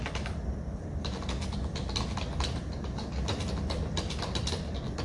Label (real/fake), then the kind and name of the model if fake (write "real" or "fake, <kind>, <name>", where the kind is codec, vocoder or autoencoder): real